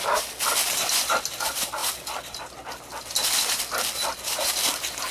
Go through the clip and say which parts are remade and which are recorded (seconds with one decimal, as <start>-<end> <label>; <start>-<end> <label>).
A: 0.0-5.1 recorded